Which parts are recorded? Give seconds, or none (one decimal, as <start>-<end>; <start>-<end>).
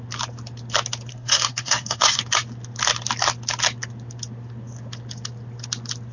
0.0-1.1; 2.2-6.1